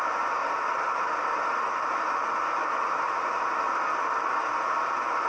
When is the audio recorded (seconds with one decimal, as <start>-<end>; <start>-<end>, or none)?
0.0-0.4; 1.4-5.3